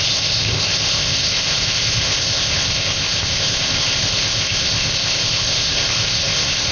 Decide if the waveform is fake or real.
fake